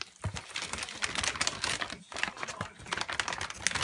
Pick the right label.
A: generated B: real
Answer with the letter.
B